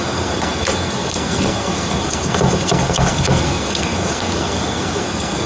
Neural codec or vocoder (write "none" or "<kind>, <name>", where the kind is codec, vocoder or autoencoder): codec, SNAC